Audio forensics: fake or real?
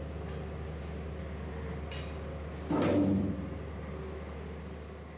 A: real